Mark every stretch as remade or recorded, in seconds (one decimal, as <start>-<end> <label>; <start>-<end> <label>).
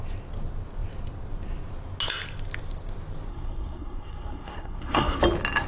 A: 0.0-3.3 recorded; 3.3-5.2 remade; 5.2-5.7 recorded